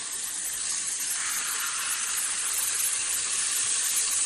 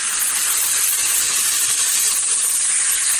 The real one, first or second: second